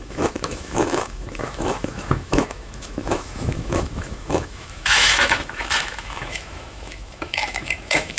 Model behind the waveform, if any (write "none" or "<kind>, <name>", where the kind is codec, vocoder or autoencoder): autoencoder, DAC-VAE